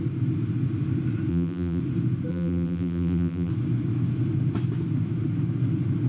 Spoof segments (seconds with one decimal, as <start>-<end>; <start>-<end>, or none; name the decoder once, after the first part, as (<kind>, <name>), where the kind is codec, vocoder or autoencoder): 1.3-1.8 (vocoder, BigVGAN v2); 2.3-3.5